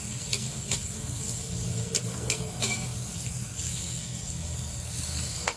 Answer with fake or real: fake